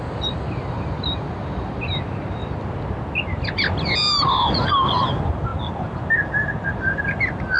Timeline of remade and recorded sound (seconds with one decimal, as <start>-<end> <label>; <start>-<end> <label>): 0.0-7.6 recorded